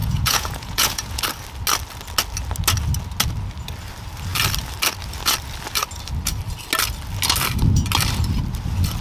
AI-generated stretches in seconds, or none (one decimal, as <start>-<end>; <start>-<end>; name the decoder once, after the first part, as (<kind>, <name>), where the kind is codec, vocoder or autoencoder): 0.0-1.2 (vocoder, Vocos)